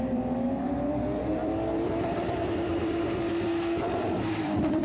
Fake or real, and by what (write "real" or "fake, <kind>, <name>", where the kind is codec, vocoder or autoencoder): fake, vocoder, BigVGAN v2